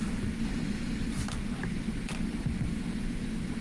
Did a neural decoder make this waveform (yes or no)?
yes